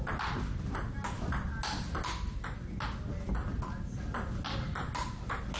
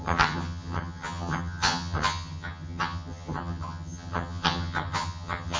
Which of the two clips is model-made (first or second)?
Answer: second